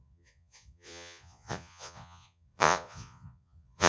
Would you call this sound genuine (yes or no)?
no